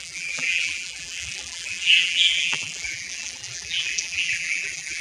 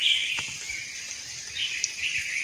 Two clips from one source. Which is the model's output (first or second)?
first